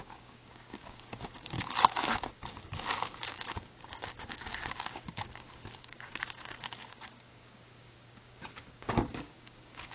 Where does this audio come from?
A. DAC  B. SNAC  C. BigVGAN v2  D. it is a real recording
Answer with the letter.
A